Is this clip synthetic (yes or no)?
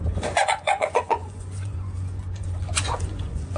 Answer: yes